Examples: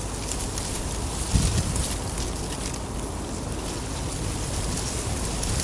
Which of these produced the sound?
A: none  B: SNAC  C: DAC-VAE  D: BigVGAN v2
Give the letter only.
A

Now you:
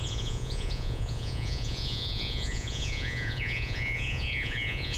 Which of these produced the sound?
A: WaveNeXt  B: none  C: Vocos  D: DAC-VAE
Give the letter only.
C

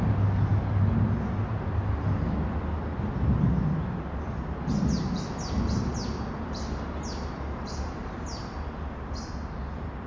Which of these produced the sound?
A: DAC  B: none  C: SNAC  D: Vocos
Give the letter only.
B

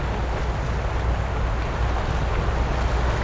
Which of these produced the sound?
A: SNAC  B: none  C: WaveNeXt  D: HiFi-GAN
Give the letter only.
B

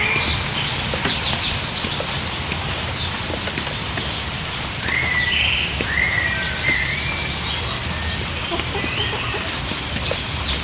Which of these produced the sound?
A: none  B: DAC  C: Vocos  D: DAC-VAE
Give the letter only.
A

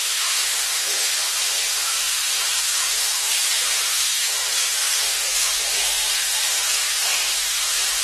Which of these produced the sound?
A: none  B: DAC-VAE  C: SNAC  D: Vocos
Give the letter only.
B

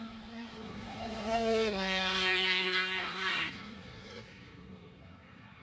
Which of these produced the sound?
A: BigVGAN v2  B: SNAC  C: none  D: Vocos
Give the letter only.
B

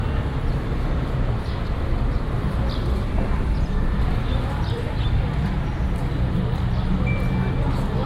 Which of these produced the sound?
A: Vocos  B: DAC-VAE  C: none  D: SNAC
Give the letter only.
C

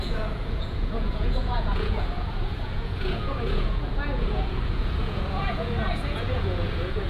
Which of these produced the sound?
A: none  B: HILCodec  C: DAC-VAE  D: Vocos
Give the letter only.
D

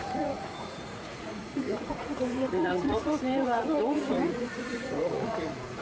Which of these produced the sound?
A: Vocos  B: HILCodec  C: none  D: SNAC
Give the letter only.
A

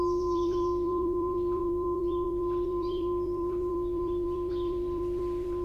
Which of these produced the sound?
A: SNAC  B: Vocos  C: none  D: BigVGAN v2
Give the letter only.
D